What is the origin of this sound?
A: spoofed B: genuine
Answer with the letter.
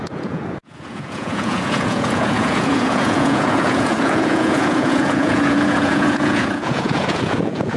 A